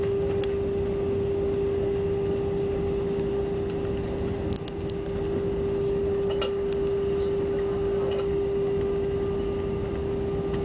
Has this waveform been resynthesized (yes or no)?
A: no